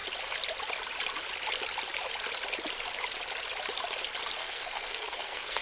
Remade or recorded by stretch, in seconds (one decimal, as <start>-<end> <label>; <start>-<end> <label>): 0.0-4.4 recorded; 4.4-5.6 remade